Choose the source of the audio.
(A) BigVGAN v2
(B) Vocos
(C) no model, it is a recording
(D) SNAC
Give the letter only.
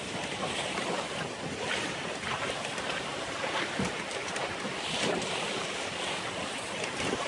A